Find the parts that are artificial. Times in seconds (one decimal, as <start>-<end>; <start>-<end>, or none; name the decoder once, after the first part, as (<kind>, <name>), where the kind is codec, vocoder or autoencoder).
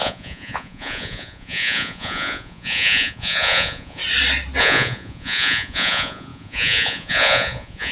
0.0-4.0 (vocoder, Vocos); 4.6-7.9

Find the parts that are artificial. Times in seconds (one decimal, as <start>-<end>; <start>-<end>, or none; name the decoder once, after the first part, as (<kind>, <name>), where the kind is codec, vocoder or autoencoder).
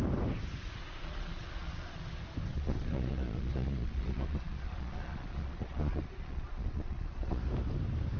0.8-2.0 (vocoder, Vocos); 2.5-7.4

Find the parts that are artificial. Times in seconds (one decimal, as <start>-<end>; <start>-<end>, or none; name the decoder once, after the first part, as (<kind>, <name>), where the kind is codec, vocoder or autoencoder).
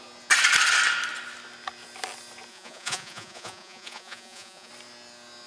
2.5-4.7 (vocoder, Vocos)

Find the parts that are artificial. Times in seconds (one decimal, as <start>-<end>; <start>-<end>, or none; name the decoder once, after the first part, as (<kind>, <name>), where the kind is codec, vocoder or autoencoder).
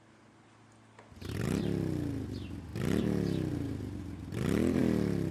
none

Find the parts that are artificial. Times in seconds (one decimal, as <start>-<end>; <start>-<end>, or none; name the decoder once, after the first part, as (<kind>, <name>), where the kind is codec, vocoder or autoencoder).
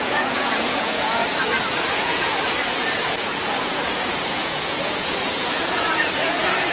0.0-1.2 (vocoder, Vocos); 1.9-6.7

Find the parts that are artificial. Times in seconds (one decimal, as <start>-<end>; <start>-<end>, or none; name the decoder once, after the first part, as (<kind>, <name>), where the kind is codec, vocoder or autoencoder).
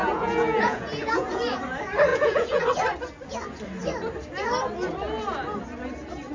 0.0-1.6 (vocoder, Vocos); 2.1-2.6